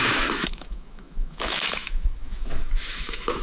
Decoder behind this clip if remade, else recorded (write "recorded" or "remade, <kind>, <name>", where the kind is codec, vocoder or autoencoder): remade, autoencoder, DAC-VAE